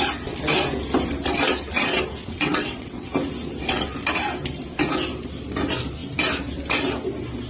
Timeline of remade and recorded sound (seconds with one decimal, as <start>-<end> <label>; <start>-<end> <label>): 0.0-2.2 recorded; 2.2-3.1 remade; 3.1-7.5 recorded